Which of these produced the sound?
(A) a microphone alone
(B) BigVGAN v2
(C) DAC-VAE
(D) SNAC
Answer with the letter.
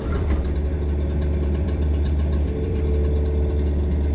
B